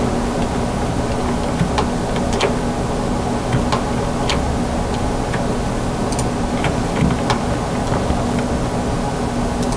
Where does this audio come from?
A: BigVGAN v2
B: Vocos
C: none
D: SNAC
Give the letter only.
C